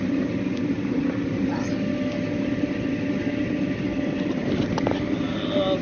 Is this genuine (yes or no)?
yes